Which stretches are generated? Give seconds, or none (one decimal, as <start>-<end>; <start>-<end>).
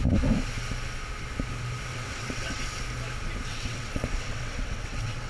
1.9-2.6; 3.5-5.3